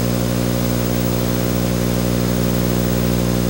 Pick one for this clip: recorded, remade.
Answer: recorded